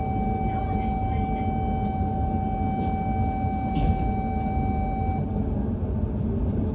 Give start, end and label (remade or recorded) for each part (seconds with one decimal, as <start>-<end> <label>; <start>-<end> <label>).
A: 0.0-6.7 recorded